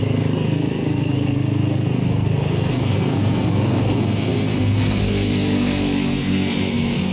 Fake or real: fake